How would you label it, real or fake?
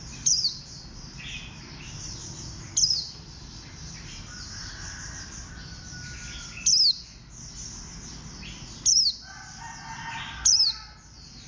real